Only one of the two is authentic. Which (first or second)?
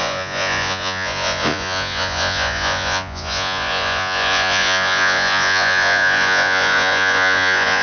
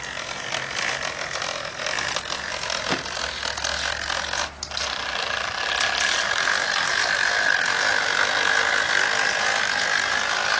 second